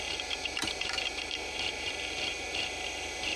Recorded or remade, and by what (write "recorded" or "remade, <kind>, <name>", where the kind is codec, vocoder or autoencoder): remade, vocoder, BigVGAN v2